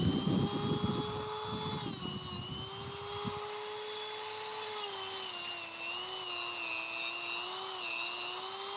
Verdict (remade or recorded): recorded